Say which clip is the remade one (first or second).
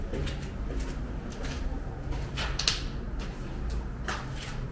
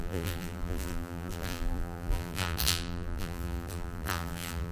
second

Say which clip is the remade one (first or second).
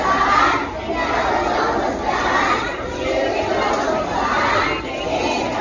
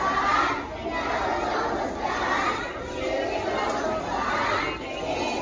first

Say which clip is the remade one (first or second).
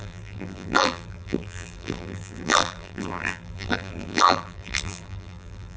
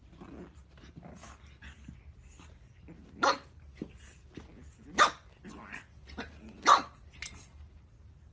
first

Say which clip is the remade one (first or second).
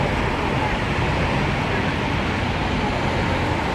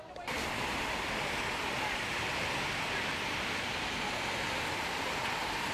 second